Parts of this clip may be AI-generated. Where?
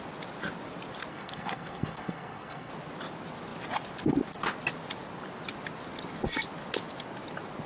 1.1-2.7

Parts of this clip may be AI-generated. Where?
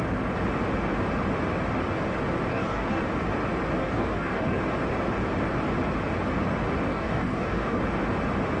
2.5-3.0; 3.8-4.6; 6.9-7.8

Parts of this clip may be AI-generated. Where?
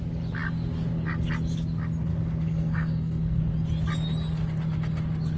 2.1-3.4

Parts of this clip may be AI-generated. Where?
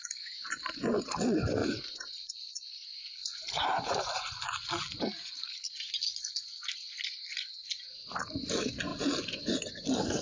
1.6-5.9; 8.9-10.2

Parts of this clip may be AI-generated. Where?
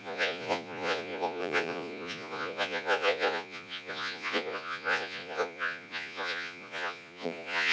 0.0-7.7